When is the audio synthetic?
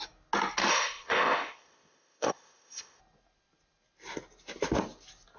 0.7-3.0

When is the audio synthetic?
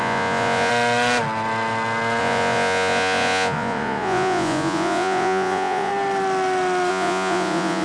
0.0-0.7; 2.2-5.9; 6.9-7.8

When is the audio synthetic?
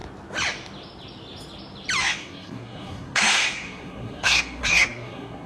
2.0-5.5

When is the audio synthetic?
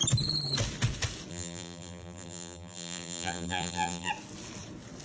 1.3-4.1